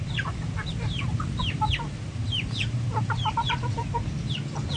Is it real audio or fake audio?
fake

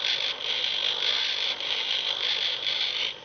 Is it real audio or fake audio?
real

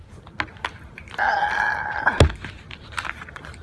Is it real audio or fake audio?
real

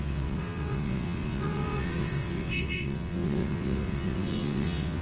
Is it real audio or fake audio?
fake